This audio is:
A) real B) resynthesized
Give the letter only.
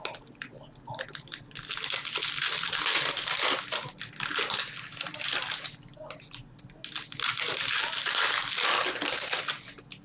A